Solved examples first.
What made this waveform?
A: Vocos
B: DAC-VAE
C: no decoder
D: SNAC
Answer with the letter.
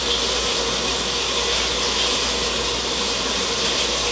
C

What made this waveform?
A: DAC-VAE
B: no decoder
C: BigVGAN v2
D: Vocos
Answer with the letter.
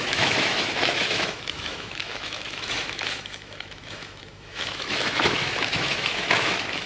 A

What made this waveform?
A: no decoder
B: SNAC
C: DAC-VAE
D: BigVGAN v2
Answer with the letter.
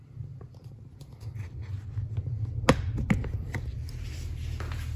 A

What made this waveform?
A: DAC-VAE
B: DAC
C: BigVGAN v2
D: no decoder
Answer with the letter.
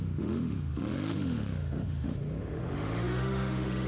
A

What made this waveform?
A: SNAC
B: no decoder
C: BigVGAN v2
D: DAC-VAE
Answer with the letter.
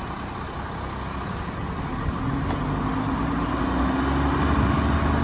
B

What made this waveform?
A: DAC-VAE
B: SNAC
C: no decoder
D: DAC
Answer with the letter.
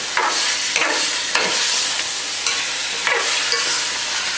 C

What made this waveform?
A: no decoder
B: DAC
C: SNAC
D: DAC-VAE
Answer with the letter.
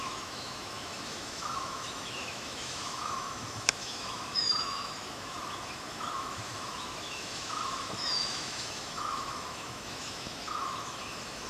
D